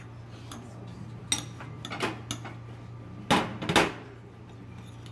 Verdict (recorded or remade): recorded